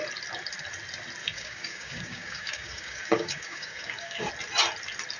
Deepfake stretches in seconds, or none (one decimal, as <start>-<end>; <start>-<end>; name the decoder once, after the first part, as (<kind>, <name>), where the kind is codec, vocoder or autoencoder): 1.2-4.3 (codec, DAC)